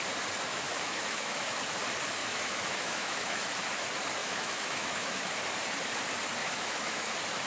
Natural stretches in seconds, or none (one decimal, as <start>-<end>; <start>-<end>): 0.0-0.5; 1.6-2.2; 3.4-4.2; 5.3-6.4; 7.1-7.5